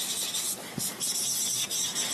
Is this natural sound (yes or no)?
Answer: yes